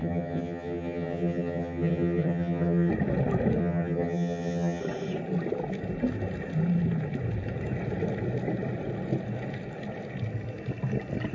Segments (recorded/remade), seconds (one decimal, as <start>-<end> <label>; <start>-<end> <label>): 0.0-2.9 remade; 2.9-3.6 recorded; 3.6-4.8 remade; 4.8-11.3 recorded